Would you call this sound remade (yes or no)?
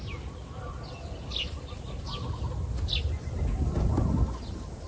no